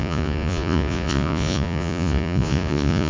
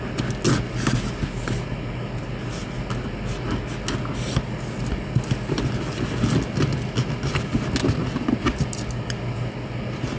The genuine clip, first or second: second